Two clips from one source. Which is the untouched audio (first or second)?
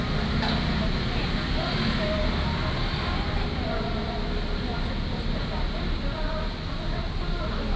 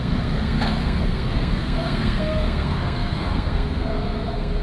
first